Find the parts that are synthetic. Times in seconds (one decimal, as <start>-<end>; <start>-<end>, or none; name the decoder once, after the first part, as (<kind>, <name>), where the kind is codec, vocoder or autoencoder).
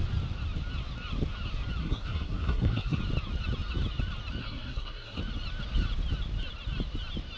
1.8-3.0 (codec, SNAC); 4.4-5.2